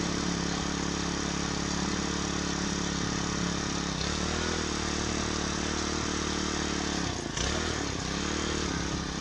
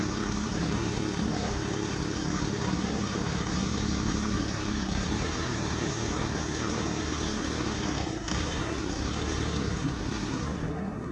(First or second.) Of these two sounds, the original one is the first